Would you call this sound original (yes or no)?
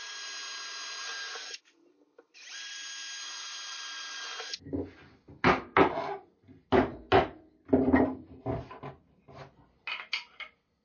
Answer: yes